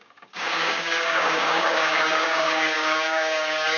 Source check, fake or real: fake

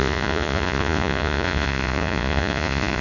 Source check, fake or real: fake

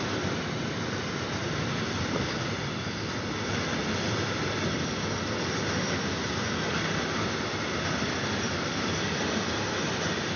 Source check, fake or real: real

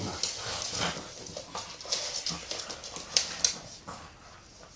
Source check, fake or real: real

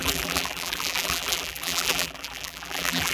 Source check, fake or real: fake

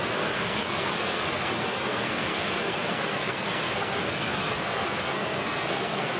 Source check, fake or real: fake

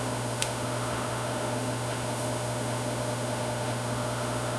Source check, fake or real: fake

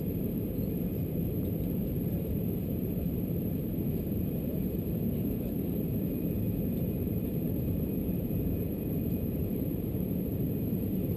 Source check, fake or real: fake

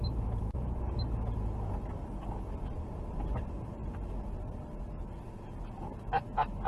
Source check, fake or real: real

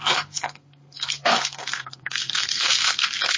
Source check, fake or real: fake